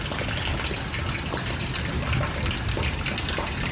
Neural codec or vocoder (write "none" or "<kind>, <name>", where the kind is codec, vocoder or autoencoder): none